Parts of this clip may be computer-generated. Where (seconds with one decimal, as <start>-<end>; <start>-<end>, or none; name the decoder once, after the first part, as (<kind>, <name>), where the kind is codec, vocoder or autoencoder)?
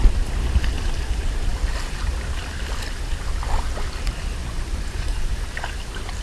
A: 4.4-5.3 (vocoder, Vocos)